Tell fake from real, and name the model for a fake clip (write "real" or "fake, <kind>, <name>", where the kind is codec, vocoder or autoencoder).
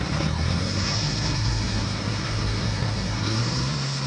fake, codec, SNAC